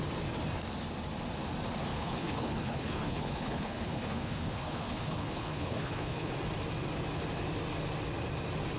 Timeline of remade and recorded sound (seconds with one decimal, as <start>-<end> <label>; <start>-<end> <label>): 0.0-1.9 recorded; 1.9-6.3 remade; 6.3-8.8 recorded